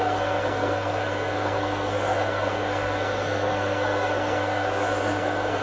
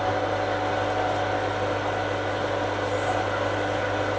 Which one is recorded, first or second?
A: second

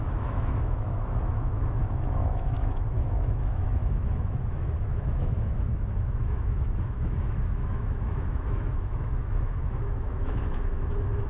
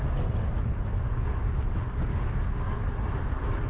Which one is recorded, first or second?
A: second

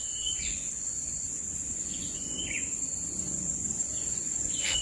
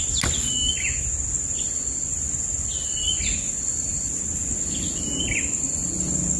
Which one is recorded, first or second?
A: second